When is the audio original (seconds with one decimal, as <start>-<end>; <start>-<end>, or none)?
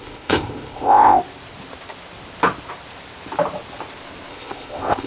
1.2-4.3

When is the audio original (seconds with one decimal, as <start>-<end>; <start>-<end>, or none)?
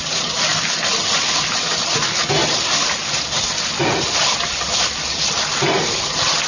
0.0-6.5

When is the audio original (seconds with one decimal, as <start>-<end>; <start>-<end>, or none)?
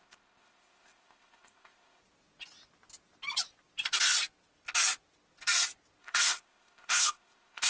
2.0-6.0